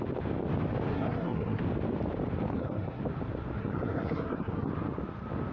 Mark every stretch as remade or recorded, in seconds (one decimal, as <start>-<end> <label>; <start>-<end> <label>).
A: 0.0-0.9 recorded; 0.9-1.6 remade; 1.6-2.5 recorded; 2.5-3.0 remade; 3.0-3.6 recorded; 3.6-4.7 remade; 4.7-5.5 recorded